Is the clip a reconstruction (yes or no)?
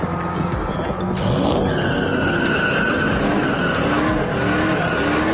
no